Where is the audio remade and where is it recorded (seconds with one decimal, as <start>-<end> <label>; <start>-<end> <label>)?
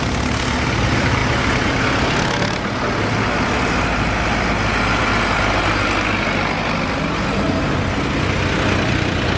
0.0-9.4 recorded